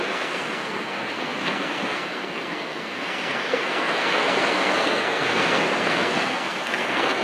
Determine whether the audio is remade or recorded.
remade